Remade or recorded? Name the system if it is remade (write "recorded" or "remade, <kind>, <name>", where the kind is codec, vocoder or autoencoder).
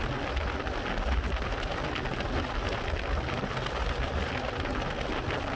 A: recorded